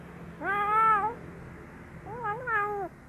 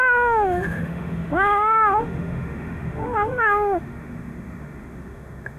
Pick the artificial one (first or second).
second